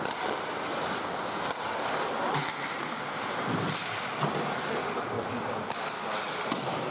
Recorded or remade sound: recorded